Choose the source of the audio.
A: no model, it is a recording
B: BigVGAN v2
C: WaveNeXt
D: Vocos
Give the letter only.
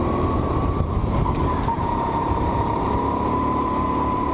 B